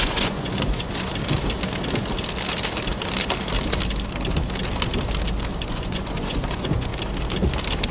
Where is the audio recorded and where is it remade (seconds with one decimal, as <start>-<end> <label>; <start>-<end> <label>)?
0.0-1.1 remade; 1.1-5.6 recorded; 5.6-6.9 remade; 6.9-7.9 recorded